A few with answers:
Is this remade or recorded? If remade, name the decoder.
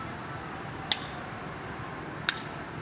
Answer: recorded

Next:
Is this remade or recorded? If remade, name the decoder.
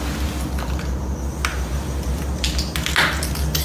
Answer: recorded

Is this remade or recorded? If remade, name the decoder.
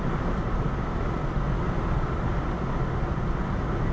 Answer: recorded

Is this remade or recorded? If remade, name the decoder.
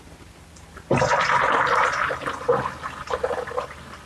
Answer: recorded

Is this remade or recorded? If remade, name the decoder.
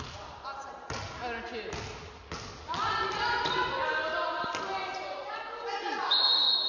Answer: recorded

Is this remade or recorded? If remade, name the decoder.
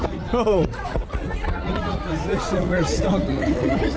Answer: remade, vocoder, Vocos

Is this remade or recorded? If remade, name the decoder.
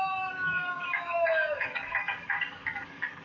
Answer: remade, codec, DAC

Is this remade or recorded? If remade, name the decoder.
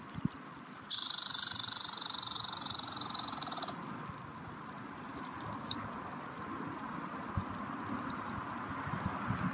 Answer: recorded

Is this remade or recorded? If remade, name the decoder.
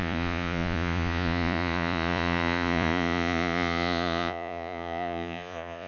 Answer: remade, vocoder, Vocos